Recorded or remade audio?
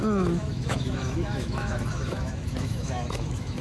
remade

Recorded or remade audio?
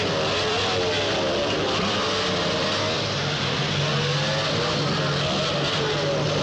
recorded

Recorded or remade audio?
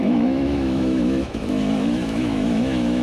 remade